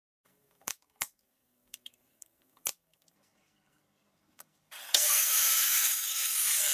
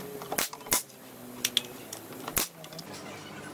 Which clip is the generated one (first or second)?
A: first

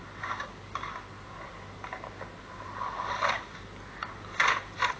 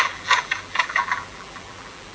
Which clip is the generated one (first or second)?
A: second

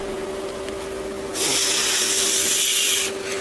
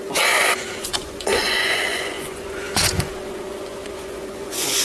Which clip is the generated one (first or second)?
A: second